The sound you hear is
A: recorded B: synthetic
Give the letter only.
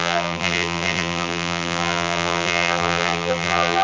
B